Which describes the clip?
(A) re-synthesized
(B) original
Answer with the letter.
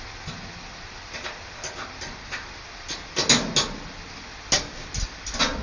B